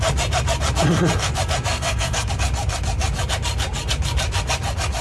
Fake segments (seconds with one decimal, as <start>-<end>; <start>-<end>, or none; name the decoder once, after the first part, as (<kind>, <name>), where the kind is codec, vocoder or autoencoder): 1.7-2.3 (codec, SNAC)